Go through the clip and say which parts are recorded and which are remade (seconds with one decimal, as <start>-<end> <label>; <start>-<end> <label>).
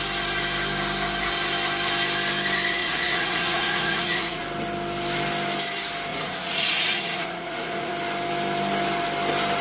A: 0.0-2.8 recorded; 2.8-4.4 remade; 4.4-6.1 recorded; 6.1-7.9 remade; 7.9-9.6 recorded